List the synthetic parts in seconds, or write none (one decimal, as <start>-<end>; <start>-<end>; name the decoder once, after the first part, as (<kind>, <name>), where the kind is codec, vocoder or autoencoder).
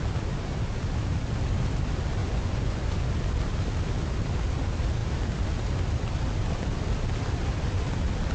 2.2-3.1 (vocoder, Vocos)